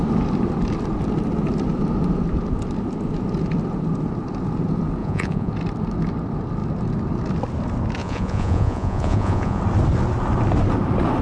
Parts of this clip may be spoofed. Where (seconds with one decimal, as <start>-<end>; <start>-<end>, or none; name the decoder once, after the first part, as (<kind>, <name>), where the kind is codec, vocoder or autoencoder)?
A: 5.0-5.5 (vocoder, Vocos); 8.0-9.6